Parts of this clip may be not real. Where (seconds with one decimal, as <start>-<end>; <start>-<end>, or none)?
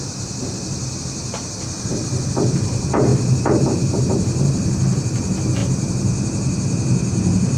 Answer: 0.0-1.9; 2.4-7.6